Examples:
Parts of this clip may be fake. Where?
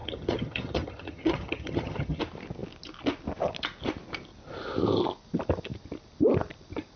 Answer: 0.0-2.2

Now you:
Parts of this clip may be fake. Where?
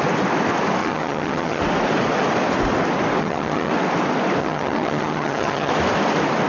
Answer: 0.8-1.6; 3.2-3.7; 4.4-5.7